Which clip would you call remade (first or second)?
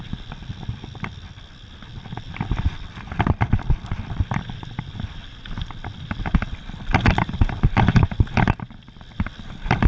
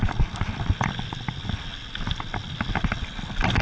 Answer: first